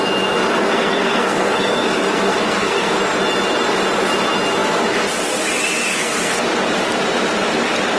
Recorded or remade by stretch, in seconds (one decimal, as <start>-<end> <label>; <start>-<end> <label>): 0.0-0.6 recorded; 0.6-3.0 remade; 3.0-5.9 recorded; 5.9-6.4 remade; 6.4-8.0 recorded